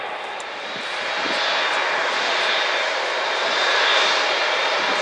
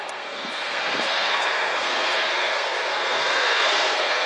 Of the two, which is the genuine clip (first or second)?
first